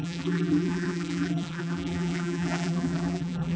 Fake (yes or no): yes